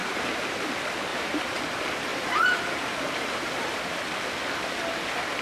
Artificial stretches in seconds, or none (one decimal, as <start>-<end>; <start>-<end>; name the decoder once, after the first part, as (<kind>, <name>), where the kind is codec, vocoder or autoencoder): 0.0-0.7 (vocoder, BigVGAN v2); 1.1-1.6; 2.1-4.0